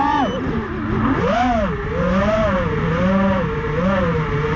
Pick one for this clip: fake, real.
real